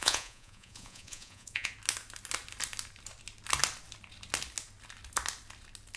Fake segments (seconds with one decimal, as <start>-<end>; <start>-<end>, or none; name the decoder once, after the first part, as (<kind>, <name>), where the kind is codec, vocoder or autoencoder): 0.0-1.7 (vocoder, Vocos)